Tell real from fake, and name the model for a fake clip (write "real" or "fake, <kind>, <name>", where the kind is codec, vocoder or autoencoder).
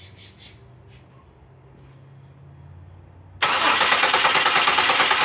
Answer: real